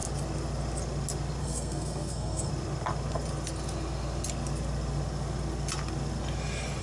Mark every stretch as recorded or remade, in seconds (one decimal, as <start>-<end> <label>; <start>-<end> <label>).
0.0-1.4 recorded; 1.4-2.5 remade; 2.5-6.8 recorded